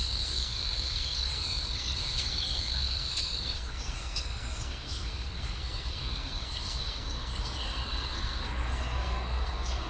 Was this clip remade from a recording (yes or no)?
yes